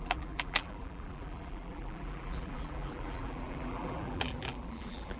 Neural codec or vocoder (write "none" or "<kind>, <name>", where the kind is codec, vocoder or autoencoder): vocoder, BigVGAN v2